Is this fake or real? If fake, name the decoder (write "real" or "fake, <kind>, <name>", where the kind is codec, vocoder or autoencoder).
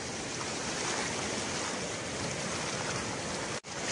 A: real